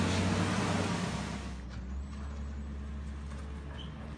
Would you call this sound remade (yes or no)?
no